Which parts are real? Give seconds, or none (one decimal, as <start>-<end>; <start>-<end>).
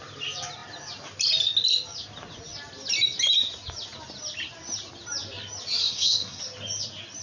0.0-5.8; 6.4-7.2